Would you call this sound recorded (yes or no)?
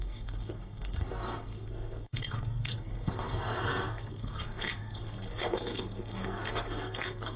no